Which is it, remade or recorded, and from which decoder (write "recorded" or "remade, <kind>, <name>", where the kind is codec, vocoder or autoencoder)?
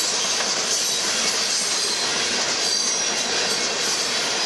recorded